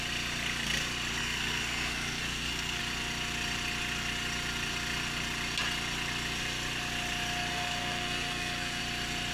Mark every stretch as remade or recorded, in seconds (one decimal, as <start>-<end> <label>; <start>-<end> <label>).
0.0-1.2 recorded; 1.2-2.8 remade; 2.8-7.5 recorded; 7.5-8.8 remade; 8.8-9.3 recorded